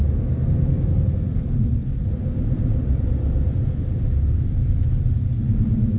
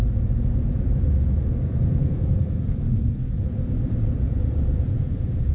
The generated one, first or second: second